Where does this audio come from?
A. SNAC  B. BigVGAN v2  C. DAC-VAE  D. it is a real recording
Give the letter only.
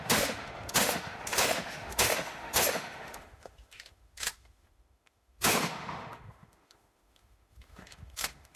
C